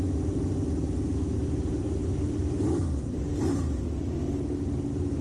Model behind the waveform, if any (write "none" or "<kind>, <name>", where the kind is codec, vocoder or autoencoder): none